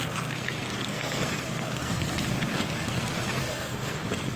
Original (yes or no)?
no